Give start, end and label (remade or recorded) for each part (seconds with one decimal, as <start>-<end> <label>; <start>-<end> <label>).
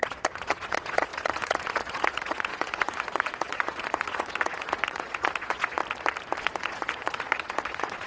0.0-5.8 remade; 5.8-6.4 recorded; 6.4-8.1 remade